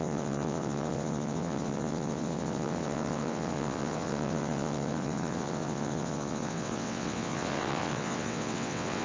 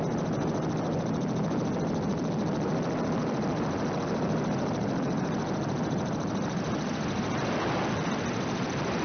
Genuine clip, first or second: second